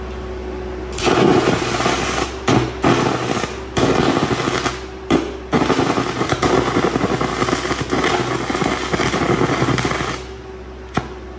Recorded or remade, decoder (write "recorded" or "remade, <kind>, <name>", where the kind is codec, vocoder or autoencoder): recorded